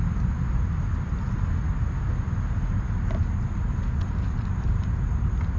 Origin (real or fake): real